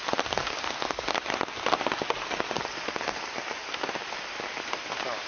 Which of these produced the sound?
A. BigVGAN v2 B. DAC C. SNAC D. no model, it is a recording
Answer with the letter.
D